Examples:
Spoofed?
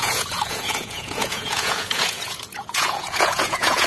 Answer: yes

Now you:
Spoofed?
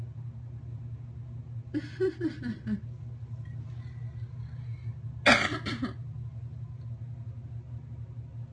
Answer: no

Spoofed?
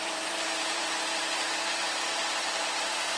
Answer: yes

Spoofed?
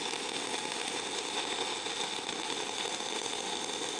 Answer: no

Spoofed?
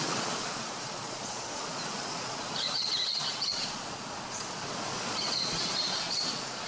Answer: yes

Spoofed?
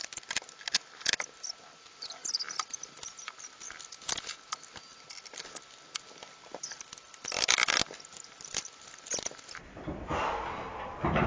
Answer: no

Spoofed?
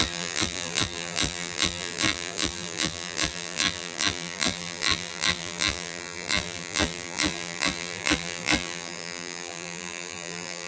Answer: yes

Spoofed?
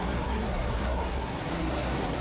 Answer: yes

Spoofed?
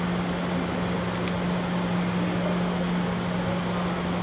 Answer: no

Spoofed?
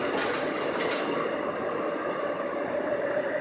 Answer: no